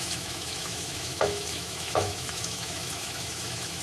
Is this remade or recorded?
remade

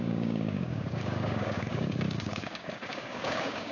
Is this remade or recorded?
remade